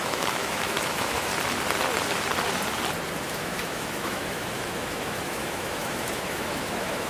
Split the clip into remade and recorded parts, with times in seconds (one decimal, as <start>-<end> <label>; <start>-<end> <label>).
0.0-1.3 remade; 1.3-3.2 recorded; 3.2-7.1 remade

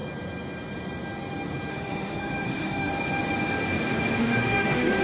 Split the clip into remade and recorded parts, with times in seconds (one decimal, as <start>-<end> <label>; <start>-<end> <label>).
0.0-1.7 recorded; 1.7-2.9 remade; 2.9-4.2 recorded; 4.2-5.0 remade